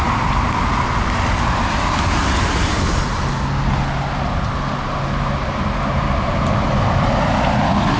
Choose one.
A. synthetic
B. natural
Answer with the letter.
B